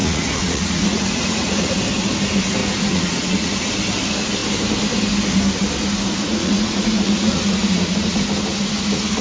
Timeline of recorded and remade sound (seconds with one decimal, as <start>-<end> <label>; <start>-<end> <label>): 0.0-1.8 remade; 1.8-2.6 recorded; 2.6-3.7 remade; 3.7-6.3 recorded; 6.3-8.1 remade; 8.1-9.2 recorded